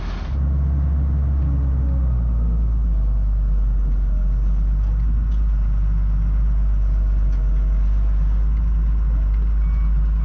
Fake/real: real